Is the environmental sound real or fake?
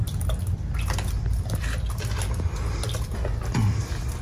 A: real